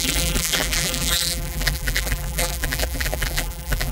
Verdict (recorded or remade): remade